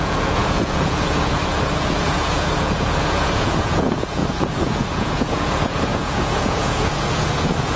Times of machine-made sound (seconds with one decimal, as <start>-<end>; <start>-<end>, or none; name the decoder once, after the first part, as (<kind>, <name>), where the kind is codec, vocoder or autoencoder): 0.0-7.8 (vocoder, Vocos)